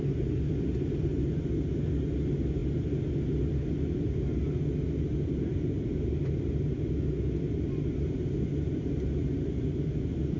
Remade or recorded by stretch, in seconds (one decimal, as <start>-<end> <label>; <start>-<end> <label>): 0.0-10.4 recorded